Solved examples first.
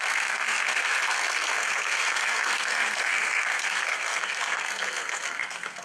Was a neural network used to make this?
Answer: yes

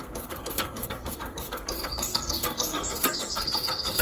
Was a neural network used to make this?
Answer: yes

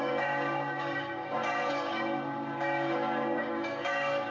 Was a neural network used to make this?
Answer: yes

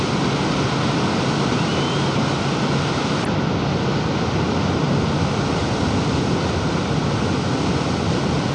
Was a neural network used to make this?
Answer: no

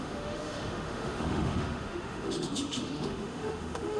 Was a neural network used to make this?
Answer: yes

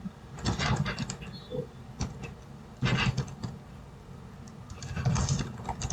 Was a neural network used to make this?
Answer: no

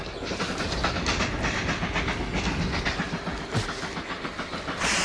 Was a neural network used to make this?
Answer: no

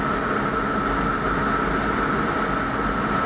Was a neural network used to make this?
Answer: no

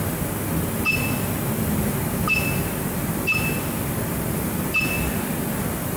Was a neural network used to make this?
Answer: no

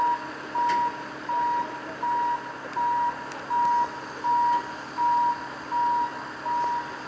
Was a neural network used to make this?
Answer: no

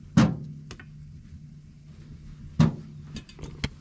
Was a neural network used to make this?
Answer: no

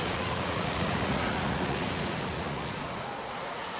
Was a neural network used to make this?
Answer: yes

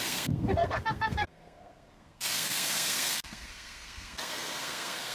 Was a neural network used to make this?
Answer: yes